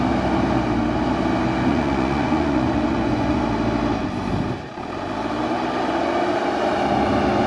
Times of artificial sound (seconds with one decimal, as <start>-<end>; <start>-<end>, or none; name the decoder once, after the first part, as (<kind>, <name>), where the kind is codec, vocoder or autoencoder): 1.7-3.4 (vocoder, Vocos)